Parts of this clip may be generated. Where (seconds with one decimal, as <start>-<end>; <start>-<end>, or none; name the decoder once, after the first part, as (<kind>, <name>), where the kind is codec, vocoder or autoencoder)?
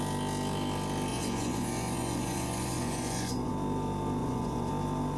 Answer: 1.1-3.5 (vocoder, Vocos); 4.2-4.7